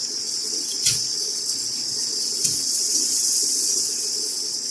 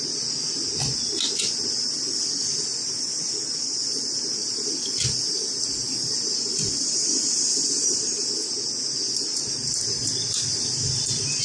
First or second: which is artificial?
first